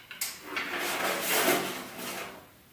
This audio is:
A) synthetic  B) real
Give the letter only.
B